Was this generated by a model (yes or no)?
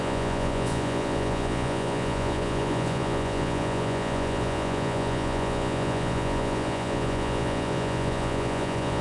yes